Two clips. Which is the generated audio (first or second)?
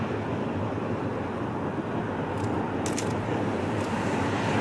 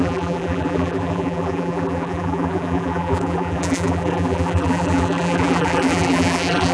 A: second